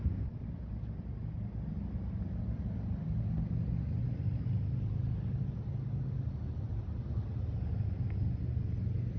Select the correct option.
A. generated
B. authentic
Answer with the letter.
B